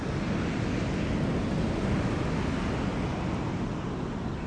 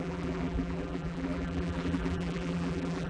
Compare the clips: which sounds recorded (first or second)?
first